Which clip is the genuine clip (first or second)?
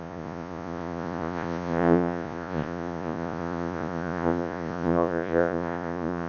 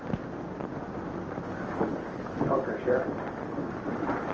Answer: second